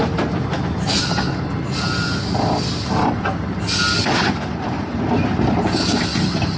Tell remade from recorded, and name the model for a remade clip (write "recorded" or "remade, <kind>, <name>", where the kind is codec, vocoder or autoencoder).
recorded